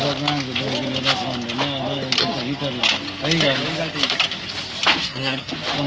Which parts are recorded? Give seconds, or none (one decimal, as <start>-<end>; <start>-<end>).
0.0-5.0; 5.5-5.9